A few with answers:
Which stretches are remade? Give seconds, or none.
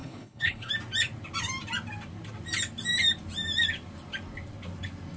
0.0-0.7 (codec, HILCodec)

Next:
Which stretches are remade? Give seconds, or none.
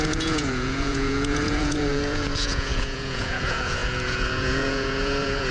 0.0-5.5 (vocoder, Vocos)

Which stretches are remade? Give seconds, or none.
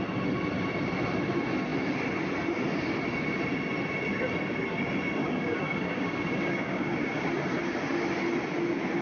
5.2-7.3 (codec, DAC)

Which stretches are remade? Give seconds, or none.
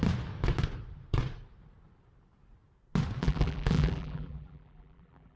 3.2-5.4 (vocoder, BigVGAN v2)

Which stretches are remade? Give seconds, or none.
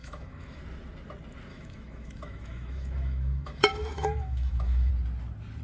0.0-0.6 (autoencoder, DAC-VAE); 1.5-4.9